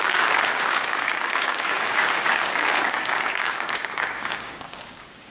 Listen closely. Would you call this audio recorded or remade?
remade